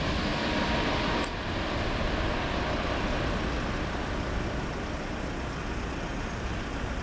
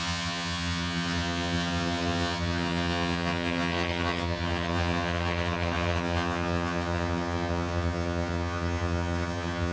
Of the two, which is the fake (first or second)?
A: second